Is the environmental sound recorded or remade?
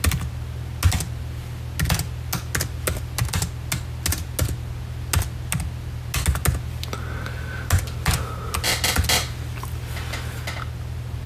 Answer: recorded